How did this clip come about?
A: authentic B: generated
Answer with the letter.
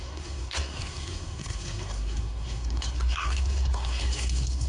B